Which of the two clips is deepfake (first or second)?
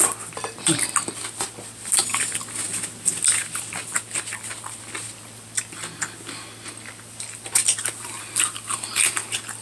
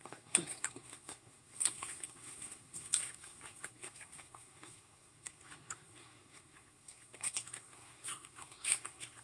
second